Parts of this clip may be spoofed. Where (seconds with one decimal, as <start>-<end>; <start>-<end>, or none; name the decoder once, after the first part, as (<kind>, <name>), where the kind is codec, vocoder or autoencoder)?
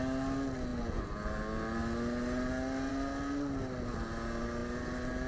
none